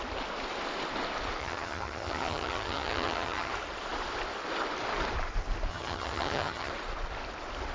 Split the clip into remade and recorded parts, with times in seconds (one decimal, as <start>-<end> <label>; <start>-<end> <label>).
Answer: 0.0-1.4 recorded; 1.4-3.5 remade; 3.5-5.7 recorded; 5.7-6.7 remade; 6.7-7.7 recorded